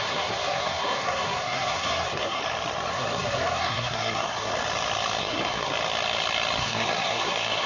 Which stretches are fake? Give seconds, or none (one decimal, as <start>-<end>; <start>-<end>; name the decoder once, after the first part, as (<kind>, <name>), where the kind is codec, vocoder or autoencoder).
0.0-2.4 (codec, SNAC); 2.9-4.5; 5.2-5.7; 6.6-7.7